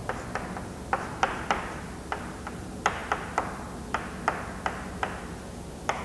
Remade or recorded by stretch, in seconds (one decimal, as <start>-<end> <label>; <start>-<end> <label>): 0.0-0.6 remade; 0.6-6.0 recorded